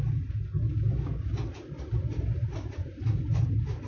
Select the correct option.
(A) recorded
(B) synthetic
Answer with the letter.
A